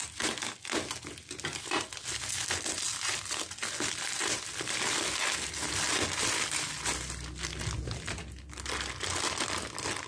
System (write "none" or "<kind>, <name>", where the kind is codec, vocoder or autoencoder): none